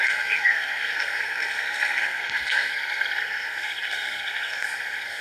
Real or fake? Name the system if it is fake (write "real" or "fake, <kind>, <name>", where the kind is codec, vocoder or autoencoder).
fake, codec, SNAC